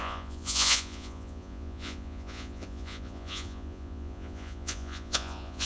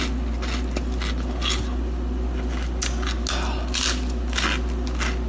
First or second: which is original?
second